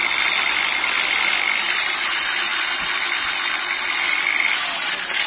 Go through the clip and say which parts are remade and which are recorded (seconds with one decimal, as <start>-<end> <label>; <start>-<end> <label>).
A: 0.0-5.3 recorded